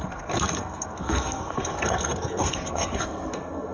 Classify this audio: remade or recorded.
remade